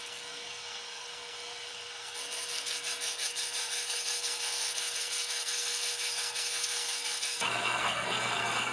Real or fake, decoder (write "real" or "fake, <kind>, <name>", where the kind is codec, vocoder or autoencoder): fake, codec, SNAC